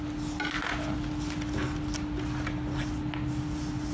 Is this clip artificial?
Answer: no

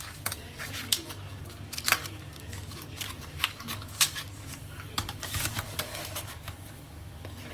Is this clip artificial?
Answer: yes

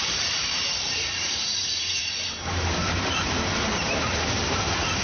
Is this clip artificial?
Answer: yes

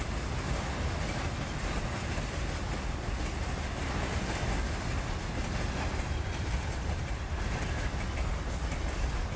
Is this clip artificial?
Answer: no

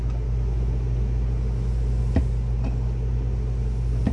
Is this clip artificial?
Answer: no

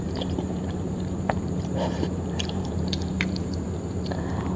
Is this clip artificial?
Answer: yes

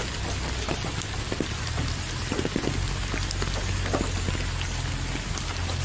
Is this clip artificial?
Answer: no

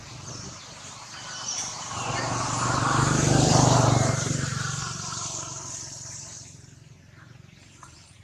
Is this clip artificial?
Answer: yes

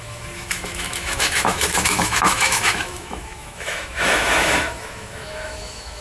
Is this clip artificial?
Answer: yes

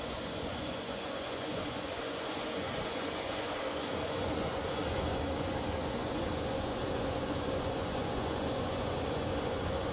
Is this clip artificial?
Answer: yes